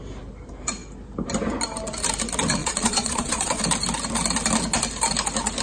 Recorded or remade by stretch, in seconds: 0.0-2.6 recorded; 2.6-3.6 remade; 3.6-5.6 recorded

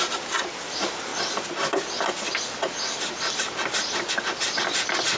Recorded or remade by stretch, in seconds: 0.0-5.2 recorded

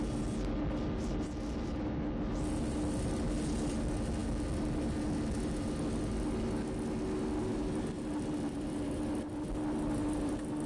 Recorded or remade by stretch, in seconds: 0.0-10.7 recorded

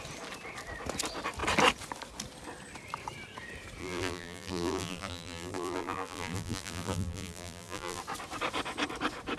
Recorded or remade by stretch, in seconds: 0.0-3.8 recorded; 3.8-8.0 remade; 8.0-9.4 recorded